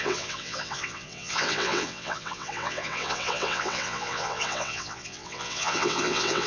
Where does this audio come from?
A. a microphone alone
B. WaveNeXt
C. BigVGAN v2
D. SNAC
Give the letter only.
B